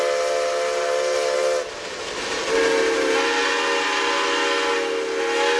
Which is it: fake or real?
real